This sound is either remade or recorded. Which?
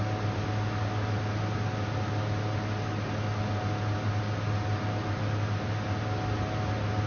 recorded